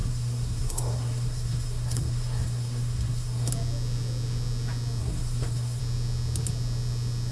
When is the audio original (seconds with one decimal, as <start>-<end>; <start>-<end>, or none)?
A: 3.5-5.0; 5.8-7.3